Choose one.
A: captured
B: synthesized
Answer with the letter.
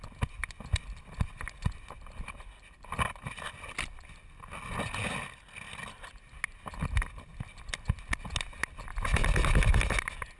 A